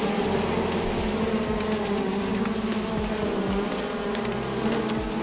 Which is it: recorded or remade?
recorded